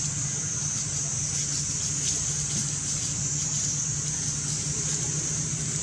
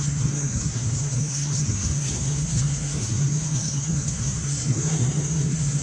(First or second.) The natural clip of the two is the first